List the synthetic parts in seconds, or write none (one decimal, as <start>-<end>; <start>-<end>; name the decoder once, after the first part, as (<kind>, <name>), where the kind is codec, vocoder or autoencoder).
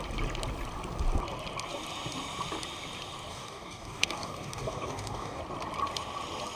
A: 3.3-5.4 (codec, DAC)